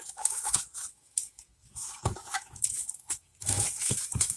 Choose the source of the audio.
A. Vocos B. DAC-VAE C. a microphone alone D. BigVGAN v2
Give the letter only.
B